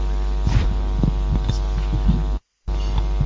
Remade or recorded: recorded